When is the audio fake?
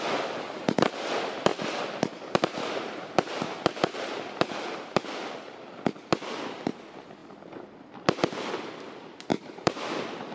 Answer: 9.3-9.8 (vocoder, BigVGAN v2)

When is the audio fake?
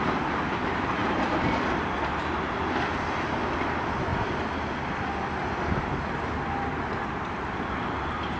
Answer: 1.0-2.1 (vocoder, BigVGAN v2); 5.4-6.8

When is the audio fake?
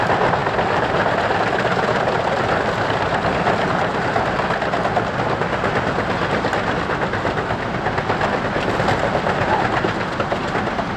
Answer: none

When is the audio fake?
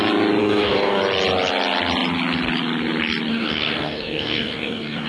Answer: 0.4-1.0 (codec, DAC); 3.3-5.1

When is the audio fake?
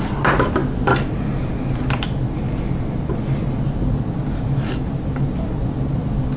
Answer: none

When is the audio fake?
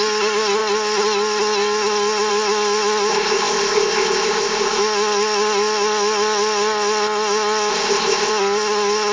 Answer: 3.1-4.8 (codec, ZipCodec); 7.7-8.3